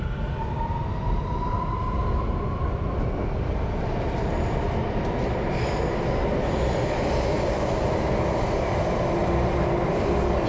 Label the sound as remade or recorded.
recorded